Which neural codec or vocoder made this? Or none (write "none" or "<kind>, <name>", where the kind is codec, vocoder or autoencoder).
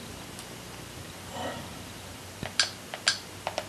none